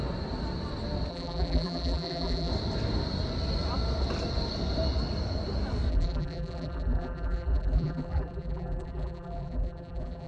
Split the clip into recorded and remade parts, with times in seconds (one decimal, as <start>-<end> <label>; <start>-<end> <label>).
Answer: 0.0-1.1 recorded; 1.1-2.5 remade; 2.5-5.9 recorded; 5.9-10.3 remade